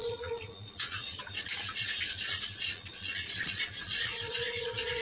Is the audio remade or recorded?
remade